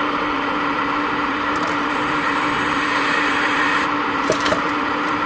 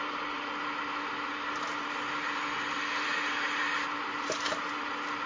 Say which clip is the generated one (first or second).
first